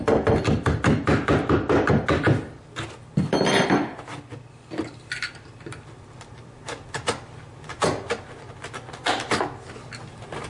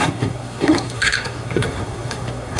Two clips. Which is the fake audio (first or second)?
second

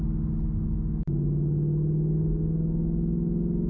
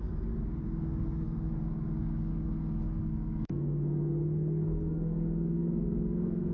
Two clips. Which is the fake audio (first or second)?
second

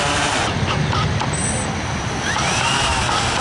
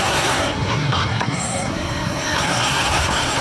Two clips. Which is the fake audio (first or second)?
second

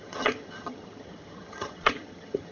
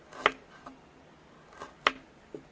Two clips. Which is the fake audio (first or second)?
first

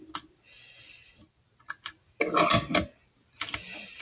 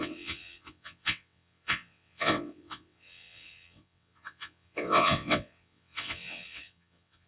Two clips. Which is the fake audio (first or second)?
second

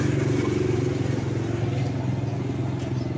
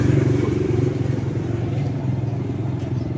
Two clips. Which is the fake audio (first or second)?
second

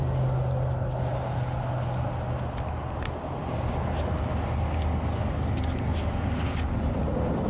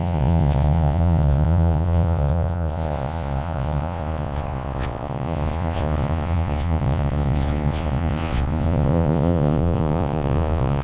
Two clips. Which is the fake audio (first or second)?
second